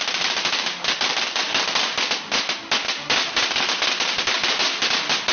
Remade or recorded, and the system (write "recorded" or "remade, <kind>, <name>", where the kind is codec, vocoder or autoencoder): recorded